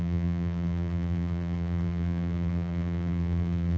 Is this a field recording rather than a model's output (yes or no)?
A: no